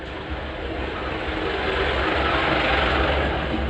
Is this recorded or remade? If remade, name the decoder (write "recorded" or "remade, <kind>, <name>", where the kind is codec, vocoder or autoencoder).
recorded